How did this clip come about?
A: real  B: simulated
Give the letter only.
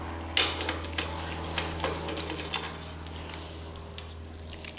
A